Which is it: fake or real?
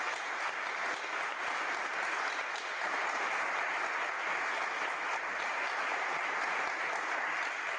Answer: real